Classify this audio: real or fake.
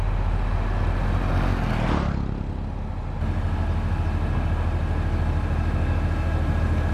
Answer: real